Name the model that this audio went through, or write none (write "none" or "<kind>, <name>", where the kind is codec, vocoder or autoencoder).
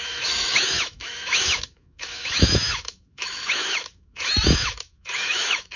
autoencoder, DAC-VAE